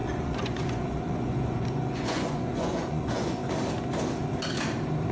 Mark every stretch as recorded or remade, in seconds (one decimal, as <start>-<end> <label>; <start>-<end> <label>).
0.0-3.4 remade; 3.4-5.1 recorded